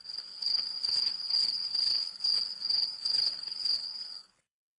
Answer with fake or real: fake